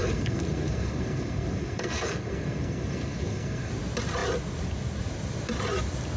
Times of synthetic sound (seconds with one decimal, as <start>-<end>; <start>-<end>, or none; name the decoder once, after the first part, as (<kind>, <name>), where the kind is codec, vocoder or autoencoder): 0.0-3.7 (codec, SNAC)